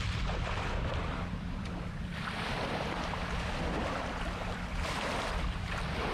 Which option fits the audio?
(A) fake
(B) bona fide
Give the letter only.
A